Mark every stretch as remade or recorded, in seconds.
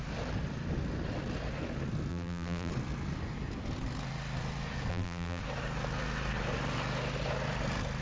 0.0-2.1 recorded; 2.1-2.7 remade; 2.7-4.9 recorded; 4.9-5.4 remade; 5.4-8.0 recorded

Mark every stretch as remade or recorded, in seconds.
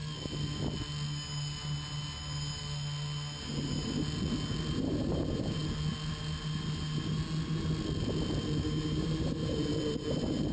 0.0-4.7 recorded; 4.7-5.6 remade; 5.6-9.0 recorded; 9.0-10.5 remade